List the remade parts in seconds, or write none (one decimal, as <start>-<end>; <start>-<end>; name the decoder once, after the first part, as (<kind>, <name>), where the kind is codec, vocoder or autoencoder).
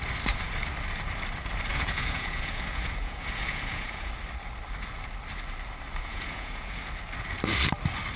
1.7-4.1 (vocoder, Vocos); 6.1-6.8